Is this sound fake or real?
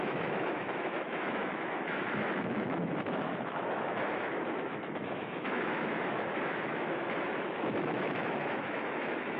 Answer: fake